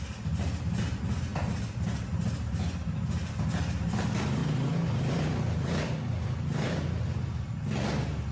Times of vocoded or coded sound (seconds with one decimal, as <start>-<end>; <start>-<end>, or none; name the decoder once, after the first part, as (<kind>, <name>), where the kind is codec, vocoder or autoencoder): none